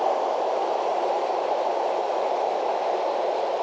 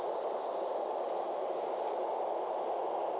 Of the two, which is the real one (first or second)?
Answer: second